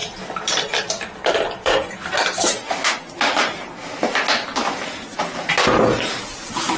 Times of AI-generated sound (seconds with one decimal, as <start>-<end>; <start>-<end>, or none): 0.0-2.9; 4.5-5.2